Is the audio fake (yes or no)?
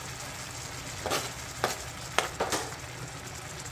no